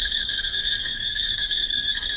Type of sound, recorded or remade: remade